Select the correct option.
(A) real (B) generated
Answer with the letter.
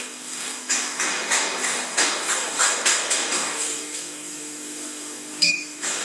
B